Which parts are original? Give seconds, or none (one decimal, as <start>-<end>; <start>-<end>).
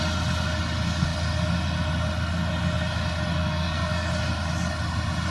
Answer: 0.0-3.4; 4.1-5.3